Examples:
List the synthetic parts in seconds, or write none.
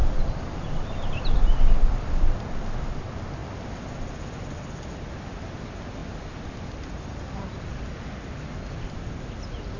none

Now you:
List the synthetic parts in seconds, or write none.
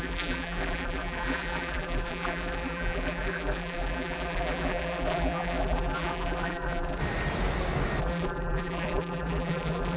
0.0-7.0 (vocoder, BigVGAN v2); 8.0-10.0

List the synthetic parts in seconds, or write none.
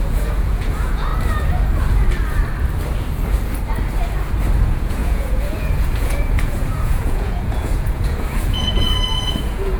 0.0-1.1 (vocoder, Vocos); 4.6-9.8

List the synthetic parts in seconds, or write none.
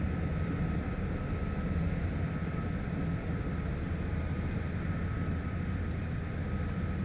none